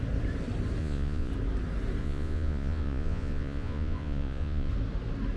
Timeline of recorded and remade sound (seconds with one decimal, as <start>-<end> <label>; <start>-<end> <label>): 0.0-0.8 recorded; 0.8-1.3 remade; 1.3-2.0 recorded; 2.0-4.7 remade; 4.7-5.4 recorded